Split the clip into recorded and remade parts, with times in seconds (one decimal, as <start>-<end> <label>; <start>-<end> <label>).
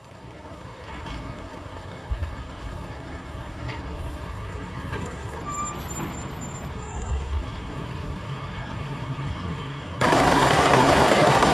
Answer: 0.0-5.4 remade; 5.4-6.7 recorded; 6.7-11.5 remade